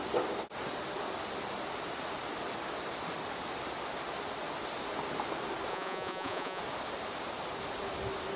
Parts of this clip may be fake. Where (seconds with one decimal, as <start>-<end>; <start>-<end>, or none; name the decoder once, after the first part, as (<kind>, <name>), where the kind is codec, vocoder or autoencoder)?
5.7-6.6 (vocoder, Vocos)